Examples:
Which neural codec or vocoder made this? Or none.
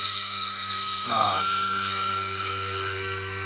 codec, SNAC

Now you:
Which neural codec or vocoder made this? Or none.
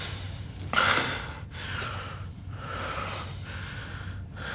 none